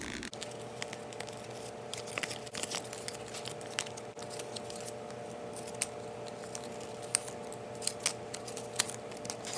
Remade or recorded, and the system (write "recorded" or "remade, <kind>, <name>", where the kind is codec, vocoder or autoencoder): recorded